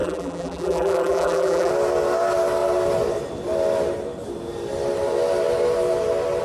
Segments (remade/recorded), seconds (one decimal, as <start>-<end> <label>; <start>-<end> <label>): 0.0-1.7 remade; 1.7-6.4 recorded